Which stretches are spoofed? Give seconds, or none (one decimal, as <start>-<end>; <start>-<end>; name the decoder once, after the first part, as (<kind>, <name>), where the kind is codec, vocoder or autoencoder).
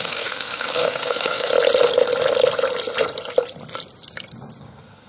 0.0-1.5 (codec, SNAC); 4.6-5.1